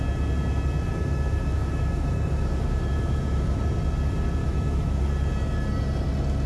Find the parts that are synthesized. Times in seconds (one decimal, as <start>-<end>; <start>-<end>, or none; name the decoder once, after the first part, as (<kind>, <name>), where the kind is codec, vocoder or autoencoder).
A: 0.9-3.6 (autoencoder, DAC-VAE); 4.4-5.0